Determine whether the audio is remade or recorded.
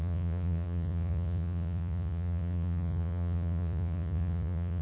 remade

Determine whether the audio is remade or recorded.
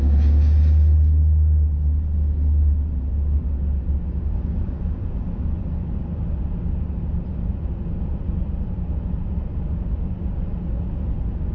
recorded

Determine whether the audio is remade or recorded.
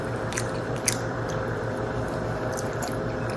remade